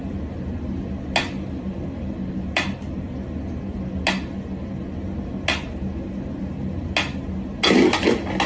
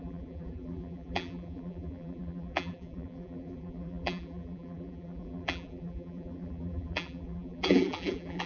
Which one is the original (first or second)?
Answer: first